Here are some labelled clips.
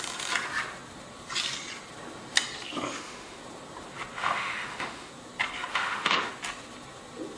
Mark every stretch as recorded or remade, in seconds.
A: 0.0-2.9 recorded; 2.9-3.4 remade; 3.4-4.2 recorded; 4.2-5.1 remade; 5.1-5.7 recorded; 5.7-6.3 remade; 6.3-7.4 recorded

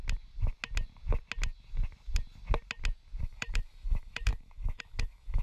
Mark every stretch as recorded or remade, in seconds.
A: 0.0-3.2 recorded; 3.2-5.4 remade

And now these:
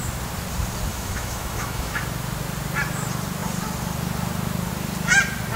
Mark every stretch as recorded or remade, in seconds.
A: 0.0-0.9 recorded; 0.9-2.0 remade; 2.0-5.6 recorded

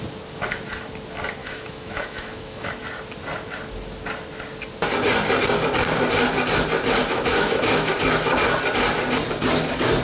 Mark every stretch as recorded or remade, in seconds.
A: 0.0-1.4 recorded; 1.4-2.7 remade; 2.7-7.1 recorded; 7.1-8.0 remade; 8.0-10.0 recorded

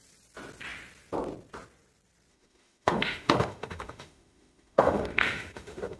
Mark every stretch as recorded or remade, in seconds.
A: 0.0-2.3 recorded; 2.3-6.0 remade

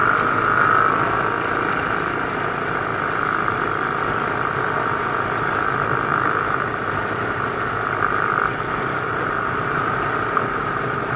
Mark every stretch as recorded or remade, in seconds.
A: 0.0-6.1 recorded; 6.1-6.7 remade; 6.7-11.2 recorded

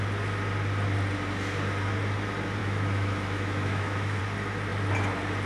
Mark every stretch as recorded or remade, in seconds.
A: 0.0-2.6 recorded; 2.6-4.2 remade; 4.2-5.5 recorded